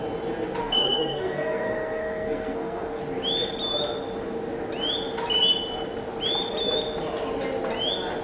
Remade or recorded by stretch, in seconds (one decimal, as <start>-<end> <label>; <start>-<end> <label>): 0.0-0.6 recorded; 0.6-3.0 remade; 3.0-8.2 recorded